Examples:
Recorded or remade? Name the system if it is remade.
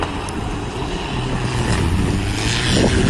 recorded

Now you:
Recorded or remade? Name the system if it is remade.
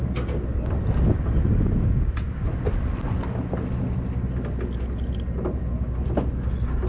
recorded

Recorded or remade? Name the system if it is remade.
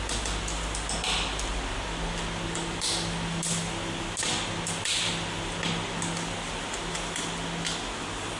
recorded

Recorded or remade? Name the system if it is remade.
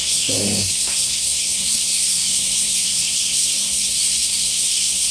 remade, codec, SNAC